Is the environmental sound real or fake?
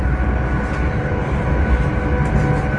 real